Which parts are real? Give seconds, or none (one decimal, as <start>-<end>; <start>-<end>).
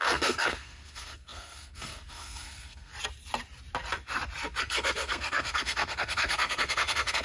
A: 2.9-4.6